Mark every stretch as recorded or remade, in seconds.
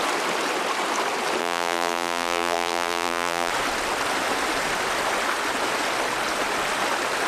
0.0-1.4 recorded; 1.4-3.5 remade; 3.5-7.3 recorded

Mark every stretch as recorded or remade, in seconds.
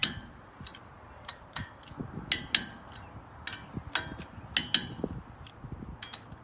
0.0-1.7 remade; 1.7-4.8 recorded; 4.8-5.5 remade; 5.5-6.4 recorded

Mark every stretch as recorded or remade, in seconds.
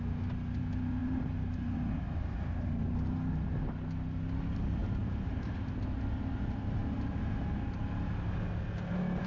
0.0-1.0 recorded; 1.0-2.9 remade; 2.9-4.8 recorded; 4.8-5.7 remade; 5.7-9.3 recorded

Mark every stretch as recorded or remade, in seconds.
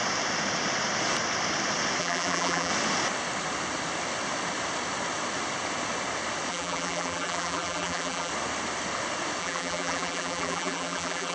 0.0-2.0 recorded; 2.0-2.7 remade; 2.7-6.5 recorded; 6.5-8.3 remade; 8.3-9.4 recorded; 9.4-11.3 remade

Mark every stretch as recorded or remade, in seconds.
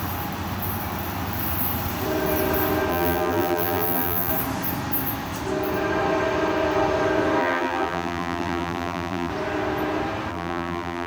0.0-2.9 recorded; 2.9-4.3 remade; 4.3-7.4 recorded; 7.4-9.3 remade; 9.3-10.3 recorded; 10.3-11.1 remade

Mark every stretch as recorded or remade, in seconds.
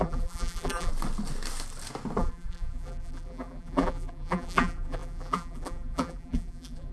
0.0-0.9 remade; 0.9-2.2 recorded; 2.2-6.9 remade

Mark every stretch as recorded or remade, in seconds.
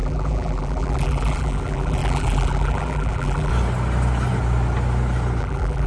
0.0-3.5 remade; 3.5-5.4 recorded; 5.4-5.9 remade